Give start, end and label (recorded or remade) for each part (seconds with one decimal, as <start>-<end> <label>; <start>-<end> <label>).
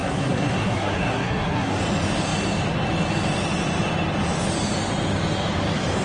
0.0-1.8 remade; 1.8-6.0 recorded